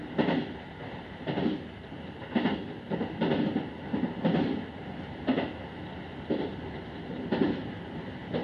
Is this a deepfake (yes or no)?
no